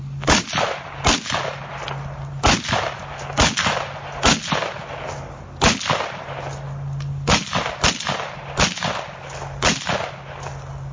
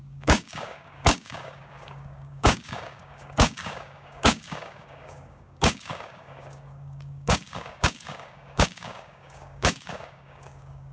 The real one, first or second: first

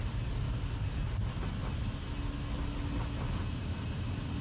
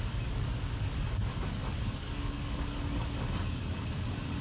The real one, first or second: first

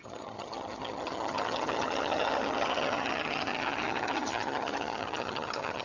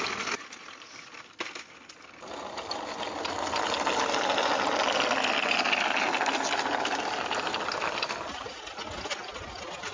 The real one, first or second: second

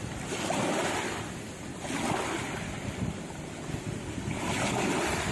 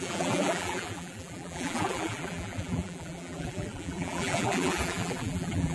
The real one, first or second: first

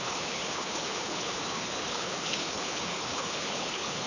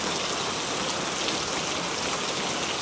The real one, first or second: second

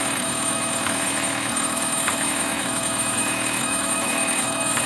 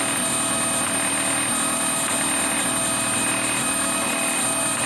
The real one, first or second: second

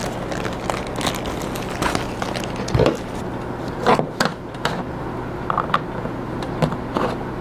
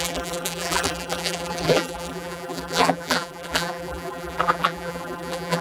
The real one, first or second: first